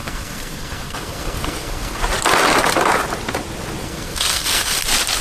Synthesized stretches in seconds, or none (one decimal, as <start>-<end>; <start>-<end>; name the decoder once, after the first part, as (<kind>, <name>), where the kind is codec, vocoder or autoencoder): 0.0-2.0 (codec, SNAC); 3.8-4.8